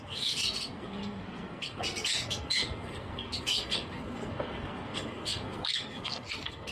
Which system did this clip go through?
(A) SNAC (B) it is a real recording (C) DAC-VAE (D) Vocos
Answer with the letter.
A